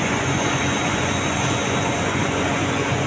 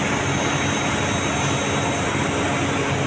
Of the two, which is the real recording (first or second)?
second